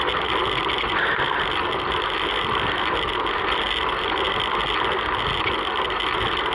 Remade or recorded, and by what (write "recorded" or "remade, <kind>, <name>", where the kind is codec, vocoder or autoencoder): recorded